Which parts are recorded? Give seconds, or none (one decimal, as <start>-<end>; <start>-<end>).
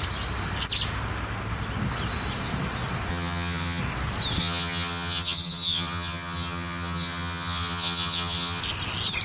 0.0-3.1; 3.8-4.4; 8.6-9.2